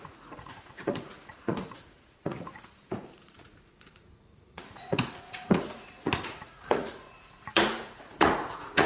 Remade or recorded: remade